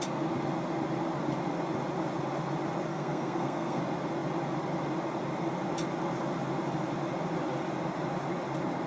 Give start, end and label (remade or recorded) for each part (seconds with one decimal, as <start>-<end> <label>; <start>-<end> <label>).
0.0-2.9 recorded; 2.9-3.8 remade; 3.8-8.9 recorded